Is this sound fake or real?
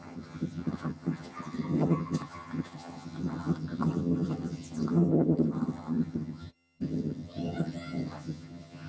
fake